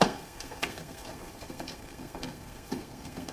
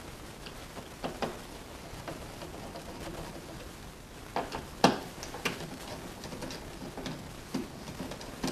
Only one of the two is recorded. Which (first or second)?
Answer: second